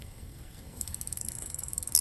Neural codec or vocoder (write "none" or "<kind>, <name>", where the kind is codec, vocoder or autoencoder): codec, SNAC